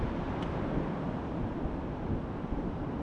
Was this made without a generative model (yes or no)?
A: yes